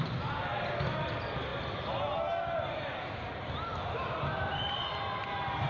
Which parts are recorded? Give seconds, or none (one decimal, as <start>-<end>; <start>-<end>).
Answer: 0.0-5.7